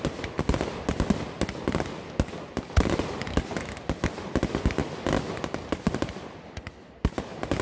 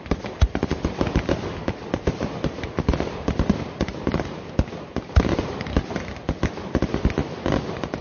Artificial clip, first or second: second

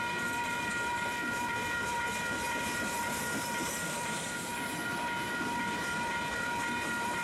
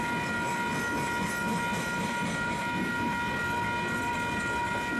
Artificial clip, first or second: first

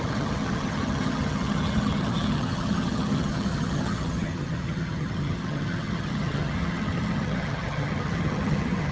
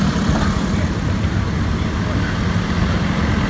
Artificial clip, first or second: first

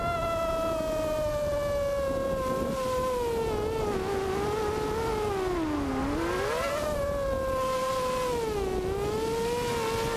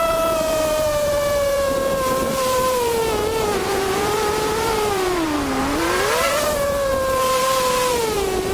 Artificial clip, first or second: second